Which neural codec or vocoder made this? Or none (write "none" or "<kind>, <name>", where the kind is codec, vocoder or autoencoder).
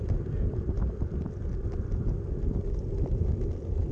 vocoder, BigVGAN v2